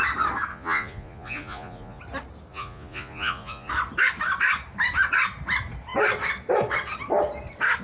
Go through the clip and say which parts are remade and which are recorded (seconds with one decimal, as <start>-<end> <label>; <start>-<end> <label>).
0.0-0.5 recorded; 0.5-2.0 remade; 2.0-2.5 recorded; 2.5-3.7 remade; 3.7-7.8 recorded